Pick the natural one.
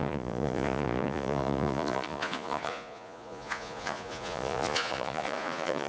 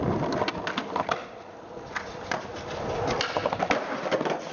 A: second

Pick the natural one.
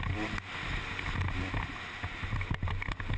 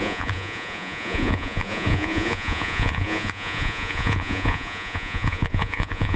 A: first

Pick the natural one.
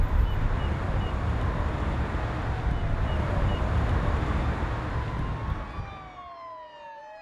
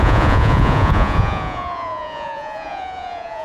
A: first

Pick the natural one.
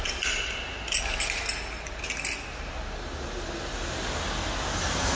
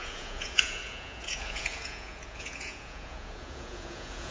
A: first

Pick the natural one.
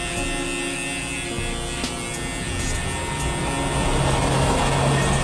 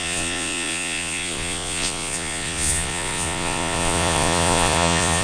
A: first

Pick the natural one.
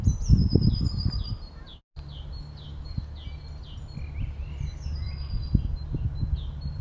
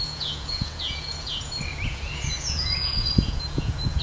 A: first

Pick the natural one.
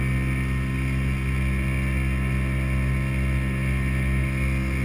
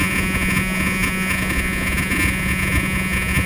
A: first